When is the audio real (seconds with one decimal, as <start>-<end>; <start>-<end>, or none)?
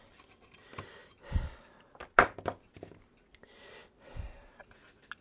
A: 0.0-5.2